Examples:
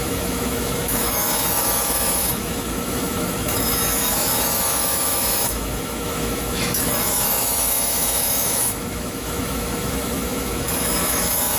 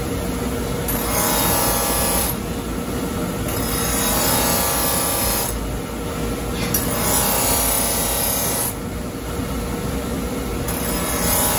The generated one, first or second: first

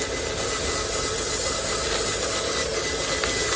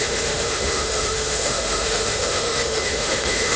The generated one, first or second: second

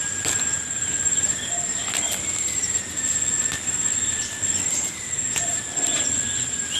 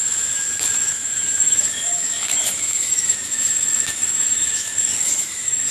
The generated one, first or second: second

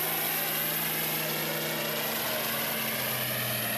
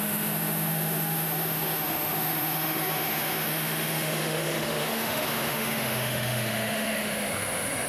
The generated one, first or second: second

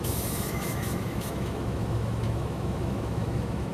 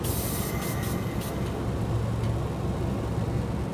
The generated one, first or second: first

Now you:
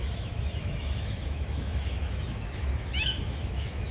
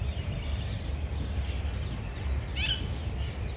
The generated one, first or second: first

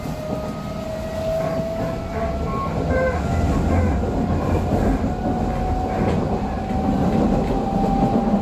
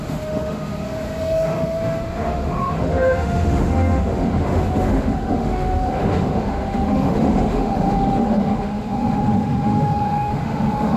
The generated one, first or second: second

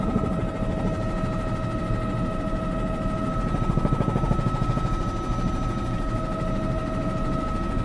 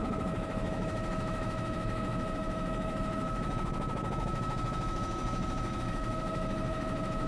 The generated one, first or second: second